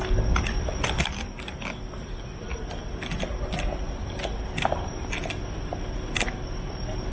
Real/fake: real